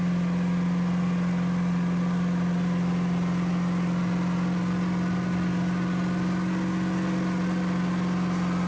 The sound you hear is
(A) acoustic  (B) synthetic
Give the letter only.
A